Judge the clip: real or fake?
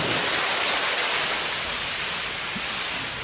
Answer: real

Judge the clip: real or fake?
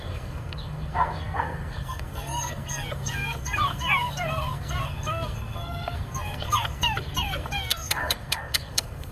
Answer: fake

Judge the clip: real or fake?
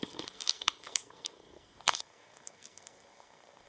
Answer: fake